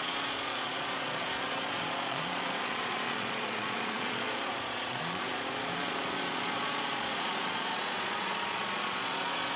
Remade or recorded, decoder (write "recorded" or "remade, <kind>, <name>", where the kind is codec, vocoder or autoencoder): remade, vocoder, Vocos